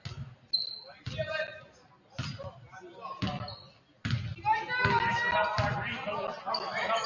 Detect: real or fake real